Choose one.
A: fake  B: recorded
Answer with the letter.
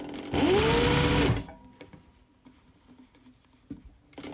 B